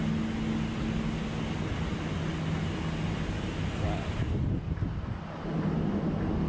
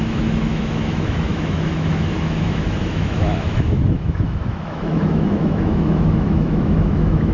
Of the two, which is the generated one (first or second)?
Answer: second